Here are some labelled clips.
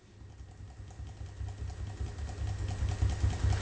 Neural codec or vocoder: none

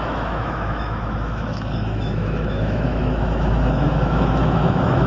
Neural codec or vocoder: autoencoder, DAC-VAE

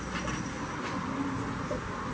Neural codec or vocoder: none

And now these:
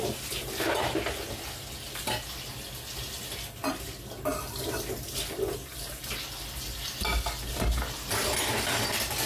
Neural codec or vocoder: none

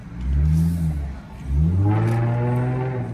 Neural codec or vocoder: none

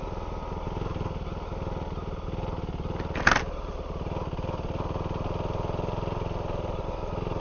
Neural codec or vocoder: none